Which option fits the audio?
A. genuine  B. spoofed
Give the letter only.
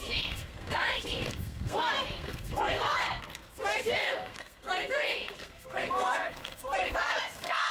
B